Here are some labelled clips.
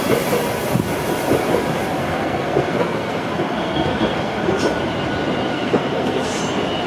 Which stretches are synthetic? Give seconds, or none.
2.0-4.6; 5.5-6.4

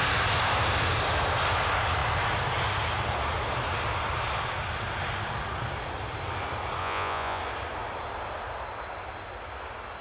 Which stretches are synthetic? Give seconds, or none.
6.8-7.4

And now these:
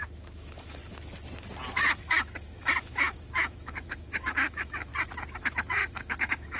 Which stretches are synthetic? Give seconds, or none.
0.0-0.8; 1.7-4.9; 5.4-6.6

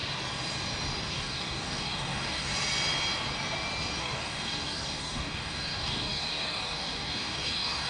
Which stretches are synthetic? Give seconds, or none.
1.1-2.5; 4.0-7.9

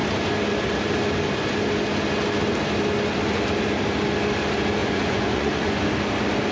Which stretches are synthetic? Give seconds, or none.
4.8-5.8